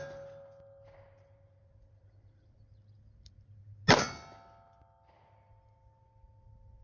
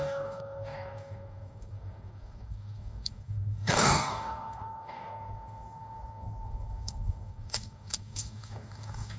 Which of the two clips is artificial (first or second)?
second